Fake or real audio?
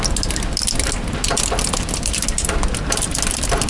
real